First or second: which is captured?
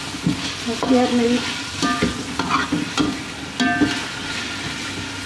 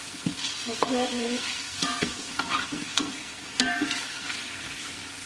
first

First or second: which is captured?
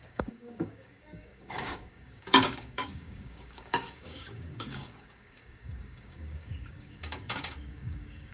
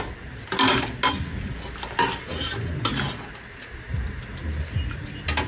second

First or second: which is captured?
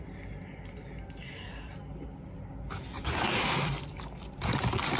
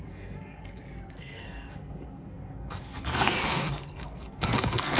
first